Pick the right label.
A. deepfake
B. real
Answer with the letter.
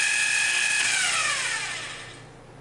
B